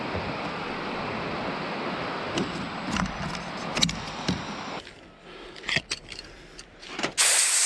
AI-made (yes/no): no